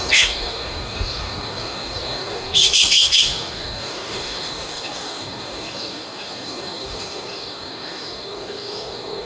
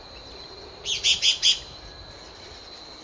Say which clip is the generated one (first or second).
first